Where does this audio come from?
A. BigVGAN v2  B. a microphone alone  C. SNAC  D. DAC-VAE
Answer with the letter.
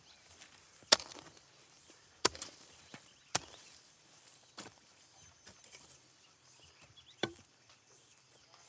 A